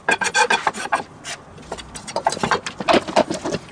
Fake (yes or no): no